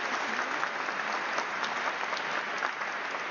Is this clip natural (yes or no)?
yes